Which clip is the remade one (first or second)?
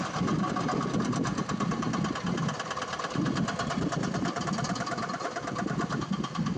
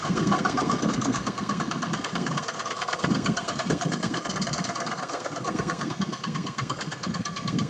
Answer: second